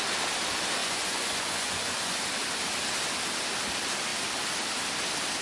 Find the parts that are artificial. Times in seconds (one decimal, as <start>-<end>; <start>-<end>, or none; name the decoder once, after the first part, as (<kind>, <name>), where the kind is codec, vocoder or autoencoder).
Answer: 0.8-2.2 (vocoder, Vocos)